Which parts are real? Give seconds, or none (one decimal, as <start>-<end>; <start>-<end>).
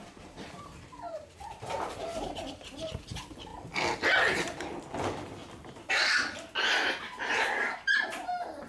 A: 2.1-3.0; 3.5-4.2; 5.4-7.0